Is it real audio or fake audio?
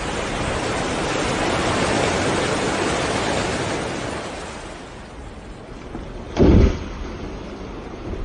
fake